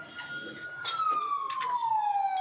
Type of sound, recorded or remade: recorded